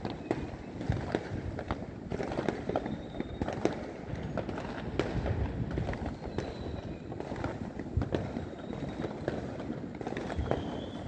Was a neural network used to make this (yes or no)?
no